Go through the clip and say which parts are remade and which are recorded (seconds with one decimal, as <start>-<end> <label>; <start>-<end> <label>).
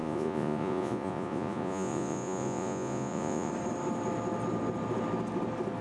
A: 0.0-3.5 remade; 3.5-5.8 recorded